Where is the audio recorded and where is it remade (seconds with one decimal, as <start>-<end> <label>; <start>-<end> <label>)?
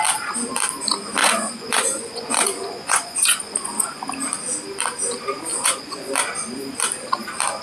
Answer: 0.0-1.2 recorded; 1.2-4.0 remade; 4.0-5.5 recorded; 5.5-6.1 remade; 6.1-7.6 recorded